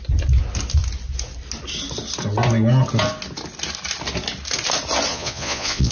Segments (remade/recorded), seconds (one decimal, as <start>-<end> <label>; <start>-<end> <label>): 0.0-5.1 recorded; 5.1-5.9 remade